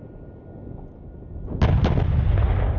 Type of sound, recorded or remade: recorded